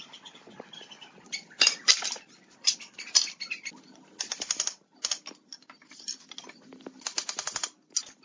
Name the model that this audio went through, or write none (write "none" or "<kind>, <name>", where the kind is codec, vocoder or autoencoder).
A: none